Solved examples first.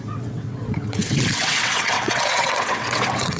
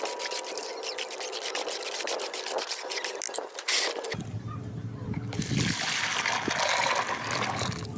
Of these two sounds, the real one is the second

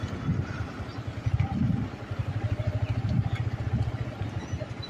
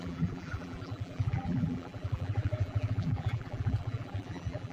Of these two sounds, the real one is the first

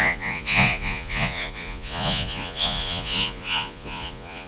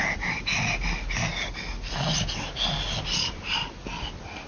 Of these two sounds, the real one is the second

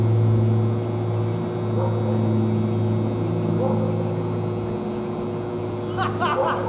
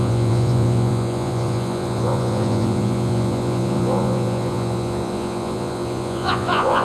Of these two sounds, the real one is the first